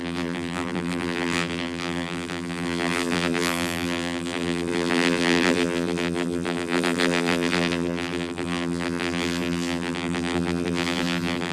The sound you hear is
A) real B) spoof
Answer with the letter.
B